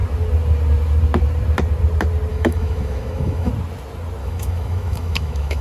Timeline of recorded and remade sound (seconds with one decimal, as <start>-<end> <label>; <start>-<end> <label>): 0.0-2.3 recorded; 2.3-3.5 remade; 3.5-4.2 recorded; 4.2-5.6 remade